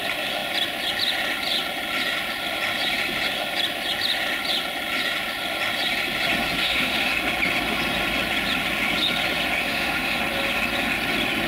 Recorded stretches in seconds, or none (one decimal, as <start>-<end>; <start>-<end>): 0.0-6.6; 7.1-9.6; 10.2-11.5